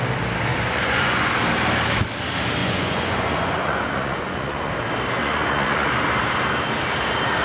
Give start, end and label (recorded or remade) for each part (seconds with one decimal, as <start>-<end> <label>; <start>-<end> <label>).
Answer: 0.0-0.5 recorded; 0.5-1.3 remade; 1.3-2.6 recorded; 2.6-4.7 remade; 4.7-5.2 recorded; 5.2-5.9 remade; 5.9-7.4 recorded